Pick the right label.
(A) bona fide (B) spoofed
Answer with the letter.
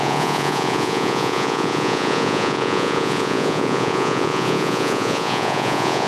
B